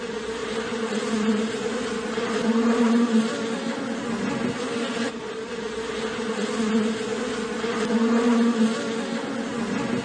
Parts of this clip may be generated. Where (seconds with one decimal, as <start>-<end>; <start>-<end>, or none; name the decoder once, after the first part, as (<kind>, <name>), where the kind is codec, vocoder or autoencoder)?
0.4-3.8 (vocoder, BigVGAN v2)